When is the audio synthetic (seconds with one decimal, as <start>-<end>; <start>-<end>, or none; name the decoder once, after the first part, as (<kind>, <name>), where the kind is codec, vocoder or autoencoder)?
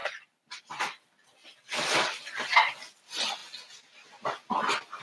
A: 0.0-0.6 (vocoder, BigVGAN v2); 1.4-2.7